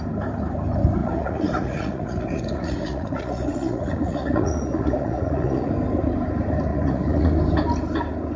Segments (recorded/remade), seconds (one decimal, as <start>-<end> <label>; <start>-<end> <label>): 0.0-1.0 recorded; 1.0-5.7 remade; 5.7-6.7 recorded; 6.7-7.3 remade; 7.3-8.4 recorded